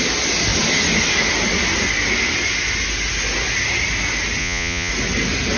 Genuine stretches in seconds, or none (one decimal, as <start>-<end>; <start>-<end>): 0.0-4.4; 4.9-5.6